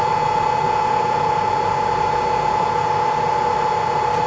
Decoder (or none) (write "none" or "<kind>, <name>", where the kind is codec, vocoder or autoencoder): none